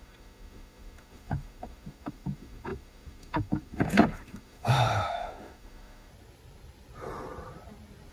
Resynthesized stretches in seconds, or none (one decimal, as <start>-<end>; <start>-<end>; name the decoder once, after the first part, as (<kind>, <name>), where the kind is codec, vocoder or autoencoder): 0.0-6.1 (autoencoder, DAC-VAE)